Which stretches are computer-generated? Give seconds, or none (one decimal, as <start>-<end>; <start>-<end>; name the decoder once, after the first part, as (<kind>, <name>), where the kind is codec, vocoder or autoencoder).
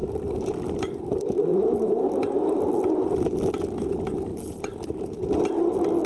0.0-1.0 (vocoder, BigVGAN v2); 4.3-5.2